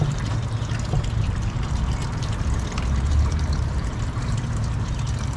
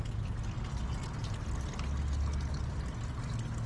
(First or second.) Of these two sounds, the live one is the second